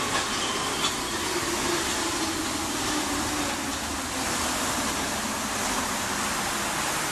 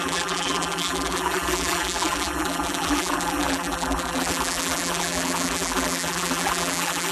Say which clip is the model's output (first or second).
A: second